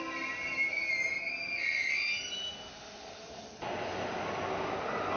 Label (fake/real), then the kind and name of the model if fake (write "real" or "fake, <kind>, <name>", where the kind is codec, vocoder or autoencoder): real